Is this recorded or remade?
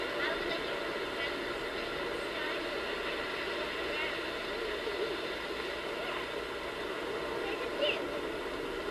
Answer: recorded